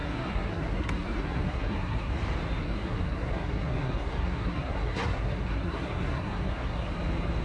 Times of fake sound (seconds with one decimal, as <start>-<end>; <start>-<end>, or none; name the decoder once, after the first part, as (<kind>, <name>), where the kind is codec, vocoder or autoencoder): 0.0-2.1 (codec, SNAC); 2.6-6.9